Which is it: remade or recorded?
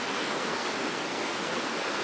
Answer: remade